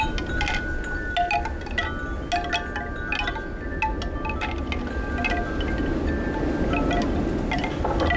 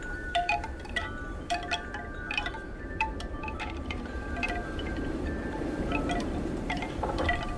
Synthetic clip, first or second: second